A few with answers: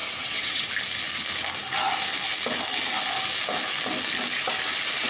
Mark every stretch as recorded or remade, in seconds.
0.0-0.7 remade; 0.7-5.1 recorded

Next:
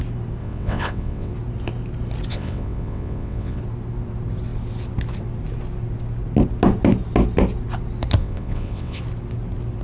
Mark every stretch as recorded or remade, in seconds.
0.0-0.4 recorded; 0.4-1.3 remade; 1.3-2.3 recorded; 2.3-3.6 remade; 3.6-8.2 recorded; 8.2-9.0 remade; 9.0-9.8 recorded

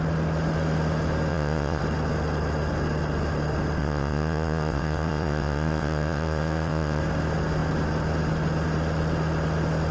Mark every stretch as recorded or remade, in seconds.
0.0-1.3 recorded; 1.3-1.8 remade; 1.8-3.8 recorded; 3.8-7.0 remade; 7.0-9.9 recorded

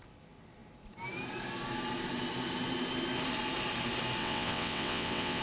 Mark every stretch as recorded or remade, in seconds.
0.0-4.2 recorded; 4.2-5.4 remade